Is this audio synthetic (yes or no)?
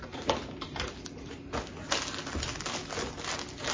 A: no